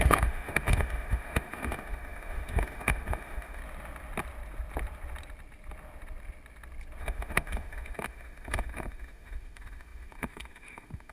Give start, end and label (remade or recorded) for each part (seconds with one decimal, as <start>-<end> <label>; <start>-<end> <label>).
0.0-3.6 remade; 3.6-7.0 recorded; 7.0-11.1 remade